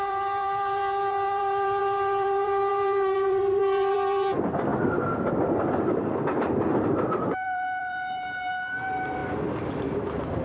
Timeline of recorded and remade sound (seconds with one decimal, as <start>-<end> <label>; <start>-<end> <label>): 0.0-10.4 remade